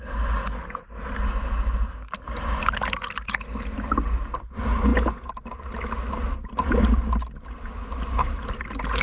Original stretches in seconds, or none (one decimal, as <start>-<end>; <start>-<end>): 0.0-9.0